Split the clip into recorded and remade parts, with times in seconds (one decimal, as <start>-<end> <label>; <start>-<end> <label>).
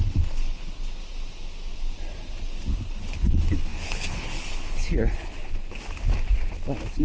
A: 0.0-1.0 remade; 1.0-2.7 recorded; 2.7-5.6 remade; 5.6-7.0 recorded